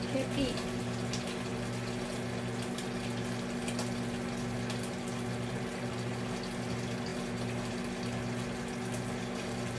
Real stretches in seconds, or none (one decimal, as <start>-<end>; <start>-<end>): 0.0-9.8